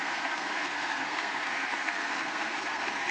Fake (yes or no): yes